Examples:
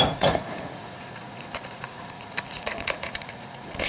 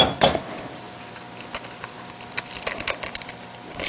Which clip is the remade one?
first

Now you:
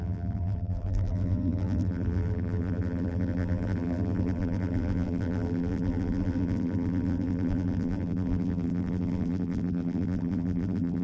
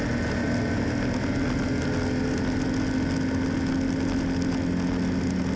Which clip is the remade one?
first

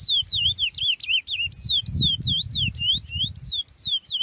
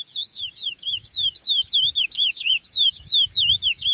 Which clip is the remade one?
second